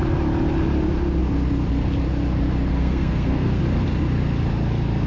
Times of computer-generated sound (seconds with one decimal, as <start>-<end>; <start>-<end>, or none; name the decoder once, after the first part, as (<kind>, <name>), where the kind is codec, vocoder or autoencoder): 2.7-3.6 (codec, SNAC)